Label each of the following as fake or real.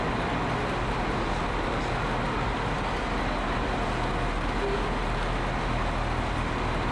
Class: real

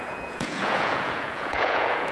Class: fake